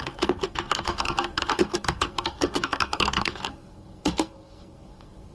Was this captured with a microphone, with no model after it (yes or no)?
no